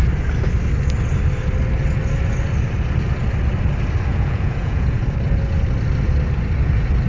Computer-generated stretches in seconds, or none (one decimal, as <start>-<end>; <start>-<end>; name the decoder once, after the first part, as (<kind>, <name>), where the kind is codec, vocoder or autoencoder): 4.1-5.0 (vocoder, Vocos)